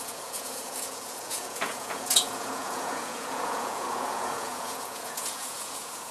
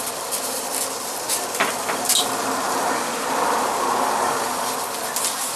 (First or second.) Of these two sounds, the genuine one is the second